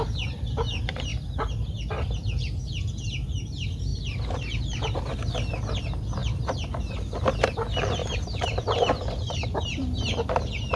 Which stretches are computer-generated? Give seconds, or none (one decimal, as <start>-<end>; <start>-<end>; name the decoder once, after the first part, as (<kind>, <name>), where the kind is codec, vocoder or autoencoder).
6.2-6.8 (vocoder, BigVGAN v2); 8.0-10.4